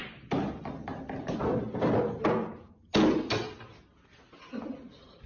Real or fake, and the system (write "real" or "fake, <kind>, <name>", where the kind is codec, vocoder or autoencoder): real